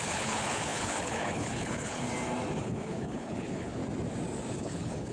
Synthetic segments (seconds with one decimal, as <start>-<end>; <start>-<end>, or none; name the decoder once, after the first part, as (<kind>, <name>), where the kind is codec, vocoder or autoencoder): 0.0-2.0 (codec, HILCodec); 2.6-3.8; 4.6-5.1